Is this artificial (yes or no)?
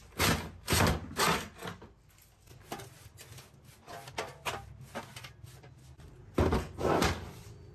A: no